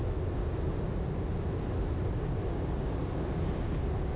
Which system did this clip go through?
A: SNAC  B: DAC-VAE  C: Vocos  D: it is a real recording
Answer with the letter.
D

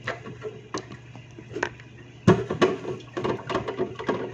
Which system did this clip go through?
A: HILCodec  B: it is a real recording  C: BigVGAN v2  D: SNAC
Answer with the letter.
B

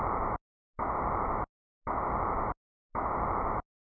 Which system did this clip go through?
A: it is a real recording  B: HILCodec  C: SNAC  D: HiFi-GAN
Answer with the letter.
A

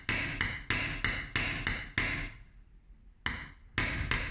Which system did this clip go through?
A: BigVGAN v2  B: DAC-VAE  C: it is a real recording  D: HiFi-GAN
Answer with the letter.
C